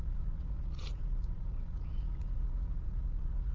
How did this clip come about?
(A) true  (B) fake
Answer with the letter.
B